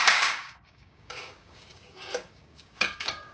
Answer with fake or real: fake